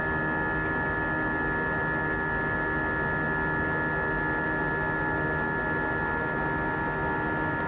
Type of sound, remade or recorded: recorded